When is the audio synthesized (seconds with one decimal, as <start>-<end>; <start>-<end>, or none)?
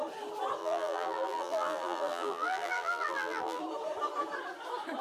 0.6-3.6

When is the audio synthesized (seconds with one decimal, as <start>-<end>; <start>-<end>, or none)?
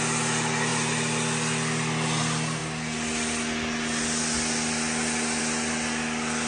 none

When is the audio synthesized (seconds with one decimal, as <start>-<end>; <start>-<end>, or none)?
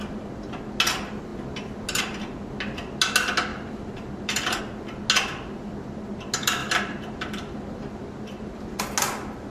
3.5-4.6; 6.6-8.8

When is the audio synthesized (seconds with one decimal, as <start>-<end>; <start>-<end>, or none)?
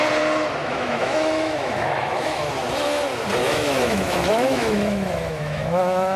0.6-2.5; 3.4-6.2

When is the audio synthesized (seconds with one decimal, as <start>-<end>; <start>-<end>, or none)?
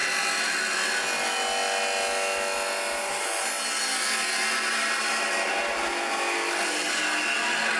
none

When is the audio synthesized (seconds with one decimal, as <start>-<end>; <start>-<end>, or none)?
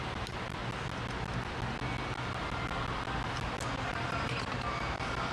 0.0-0.6; 3.8-5.3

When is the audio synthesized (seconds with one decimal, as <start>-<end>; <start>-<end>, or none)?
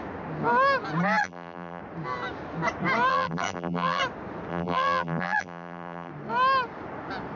1.2-1.8; 3.1-4.0; 4.5-6.1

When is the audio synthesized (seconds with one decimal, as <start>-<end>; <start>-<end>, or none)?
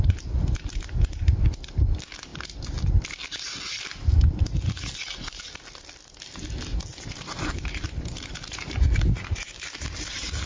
6.9-10.5